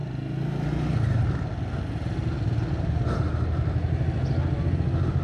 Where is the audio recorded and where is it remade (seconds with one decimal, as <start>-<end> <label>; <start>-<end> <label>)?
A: 0.0-5.2 recorded